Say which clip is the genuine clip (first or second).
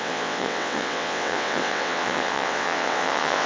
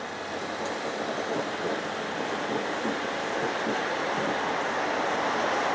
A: second